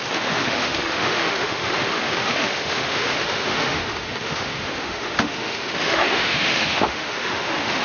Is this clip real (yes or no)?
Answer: no